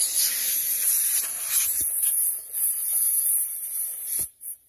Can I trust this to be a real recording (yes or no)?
yes